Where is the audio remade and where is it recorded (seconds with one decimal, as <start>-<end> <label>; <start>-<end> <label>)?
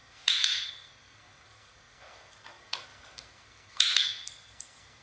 0.0-5.0 remade